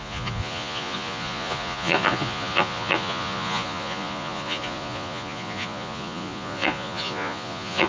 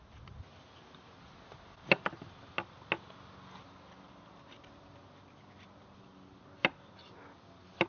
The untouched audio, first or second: second